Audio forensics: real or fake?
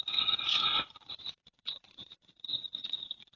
fake